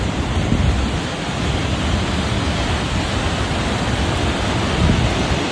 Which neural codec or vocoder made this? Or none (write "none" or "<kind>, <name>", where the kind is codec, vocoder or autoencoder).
none